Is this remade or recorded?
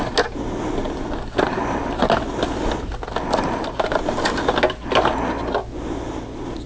recorded